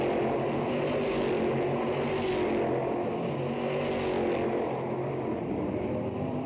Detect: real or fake real